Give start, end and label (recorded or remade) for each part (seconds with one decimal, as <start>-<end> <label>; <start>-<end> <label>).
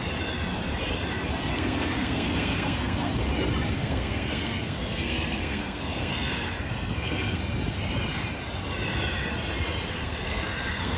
0.0-1.5 recorded; 1.5-3.1 remade; 3.1-3.7 recorded; 3.7-7.4 remade; 7.4-9.9 recorded; 9.9-11.0 remade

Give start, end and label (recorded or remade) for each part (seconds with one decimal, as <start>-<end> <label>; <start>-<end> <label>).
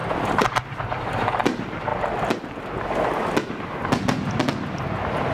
0.0-0.6 remade; 0.6-5.3 recorded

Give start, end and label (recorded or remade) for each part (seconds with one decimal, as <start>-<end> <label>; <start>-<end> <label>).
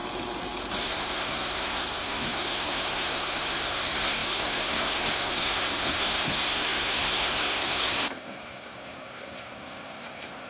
0.0-0.8 recorded; 0.8-10.5 remade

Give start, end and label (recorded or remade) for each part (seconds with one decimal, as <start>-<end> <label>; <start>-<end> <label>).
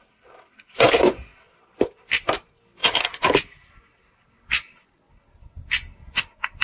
0.0-2.8 recorded; 2.8-4.5 remade; 4.5-6.6 recorded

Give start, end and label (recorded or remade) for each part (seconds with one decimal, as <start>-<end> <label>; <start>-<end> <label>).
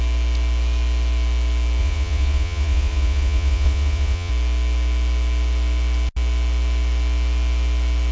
0.0-1.8 recorded; 1.8-4.3 remade; 4.3-8.1 recorded